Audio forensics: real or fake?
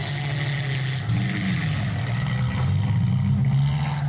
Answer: real